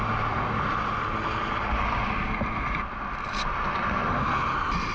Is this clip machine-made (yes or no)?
no